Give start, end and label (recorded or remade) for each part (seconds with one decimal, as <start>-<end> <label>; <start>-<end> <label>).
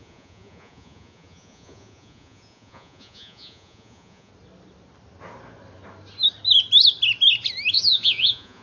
0.0-4.3 remade; 4.3-7.7 recorded; 7.7-8.6 remade